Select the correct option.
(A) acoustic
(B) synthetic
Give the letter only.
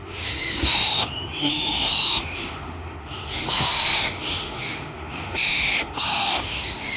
B